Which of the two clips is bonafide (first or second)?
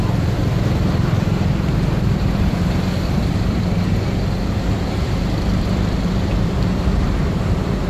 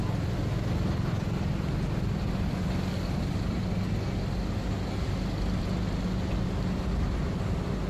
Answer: second